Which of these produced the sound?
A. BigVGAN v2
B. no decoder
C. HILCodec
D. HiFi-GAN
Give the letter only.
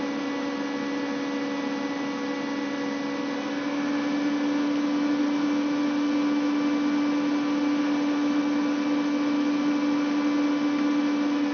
B